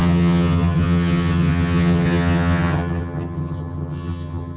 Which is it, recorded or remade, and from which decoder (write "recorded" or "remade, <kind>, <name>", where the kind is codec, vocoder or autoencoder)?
remade, vocoder, HiFi-GAN